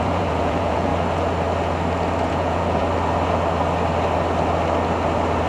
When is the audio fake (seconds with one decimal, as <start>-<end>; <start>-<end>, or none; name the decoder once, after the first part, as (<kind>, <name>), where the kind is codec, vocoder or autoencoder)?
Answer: 0.0-0.9 (vocoder, Vocos); 2.3-2.8